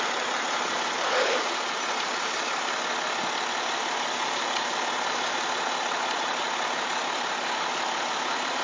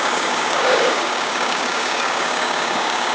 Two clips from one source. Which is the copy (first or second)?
second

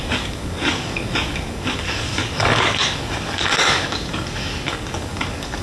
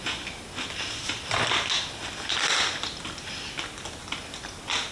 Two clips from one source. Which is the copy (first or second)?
first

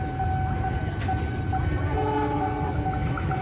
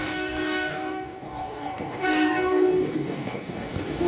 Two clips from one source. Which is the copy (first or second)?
second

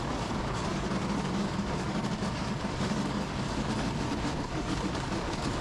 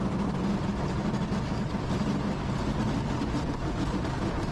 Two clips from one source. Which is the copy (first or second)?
first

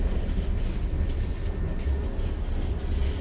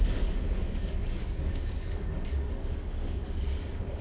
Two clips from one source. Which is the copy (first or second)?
second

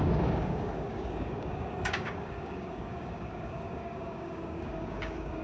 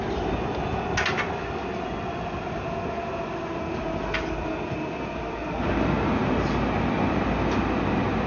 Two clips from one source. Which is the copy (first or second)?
first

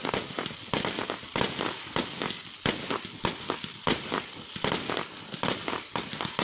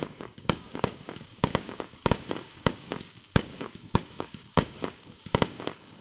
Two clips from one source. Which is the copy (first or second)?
second